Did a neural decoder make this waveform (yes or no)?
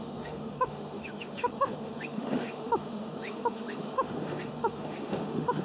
yes